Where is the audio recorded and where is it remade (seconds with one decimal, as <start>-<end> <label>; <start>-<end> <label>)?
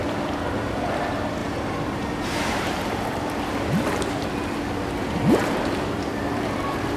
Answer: 0.0-1.4 recorded; 1.4-3.3 remade; 3.3-5.0 recorded; 5.0-5.9 remade; 5.9-7.0 recorded